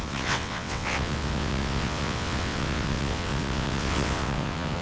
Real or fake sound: fake